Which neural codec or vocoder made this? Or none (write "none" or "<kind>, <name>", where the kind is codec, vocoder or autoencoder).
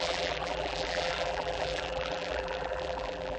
vocoder, BigVGAN v2